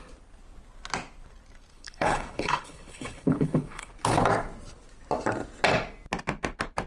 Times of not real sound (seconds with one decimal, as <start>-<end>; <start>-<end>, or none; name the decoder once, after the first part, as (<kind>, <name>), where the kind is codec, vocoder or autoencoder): 1.7-3.9 (codec, HILCodec)